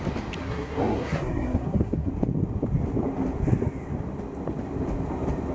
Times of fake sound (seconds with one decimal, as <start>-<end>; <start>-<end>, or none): 0.4-2.1